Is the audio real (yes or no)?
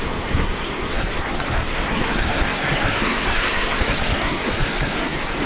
no